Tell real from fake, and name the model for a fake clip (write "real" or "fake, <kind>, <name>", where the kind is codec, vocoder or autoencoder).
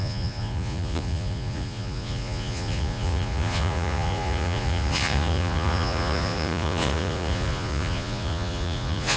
fake, vocoder, Vocos